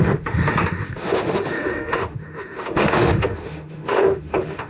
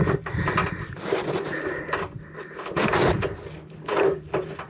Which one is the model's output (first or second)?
first